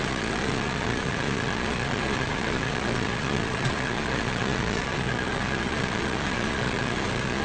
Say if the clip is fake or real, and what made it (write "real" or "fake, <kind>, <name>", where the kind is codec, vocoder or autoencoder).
fake, vocoder, Vocos